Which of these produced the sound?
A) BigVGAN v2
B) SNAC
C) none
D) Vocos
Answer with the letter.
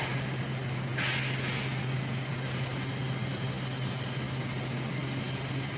C